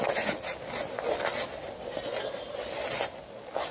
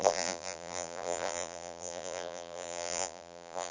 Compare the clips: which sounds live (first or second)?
first